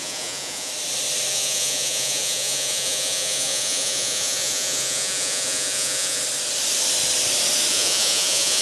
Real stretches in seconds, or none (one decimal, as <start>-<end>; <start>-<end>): 0.7-1.3; 6.2-7.7